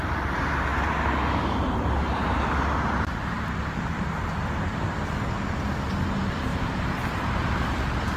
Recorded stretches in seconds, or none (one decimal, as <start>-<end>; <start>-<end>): 0.0-8.2